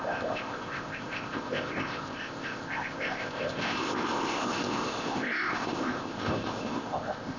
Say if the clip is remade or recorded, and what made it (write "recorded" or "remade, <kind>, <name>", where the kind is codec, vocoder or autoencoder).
remade, codec, ZipCodec